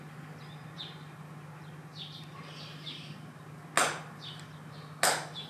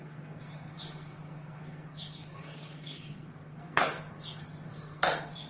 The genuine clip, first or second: first